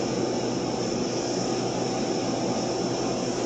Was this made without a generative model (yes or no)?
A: yes